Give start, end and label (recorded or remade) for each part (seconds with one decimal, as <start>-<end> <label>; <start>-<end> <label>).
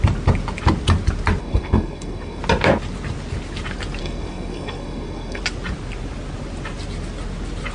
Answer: 0.0-1.4 recorded; 1.4-2.4 remade; 2.4-4.0 recorded; 4.0-5.4 remade; 5.4-7.7 recorded